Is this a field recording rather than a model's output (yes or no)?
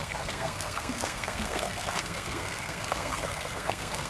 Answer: no